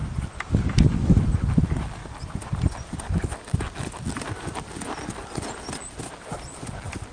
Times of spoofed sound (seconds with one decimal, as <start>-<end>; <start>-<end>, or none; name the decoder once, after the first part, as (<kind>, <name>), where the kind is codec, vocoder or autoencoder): 0.0-0.5 (vocoder, BigVGAN v2); 2.0-2.8